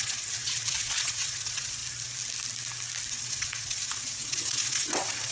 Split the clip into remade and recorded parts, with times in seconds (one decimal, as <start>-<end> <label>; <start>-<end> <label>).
0.0-1.8 remade; 1.8-3.1 recorded; 3.1-5.3 remade